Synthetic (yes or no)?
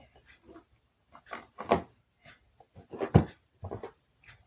no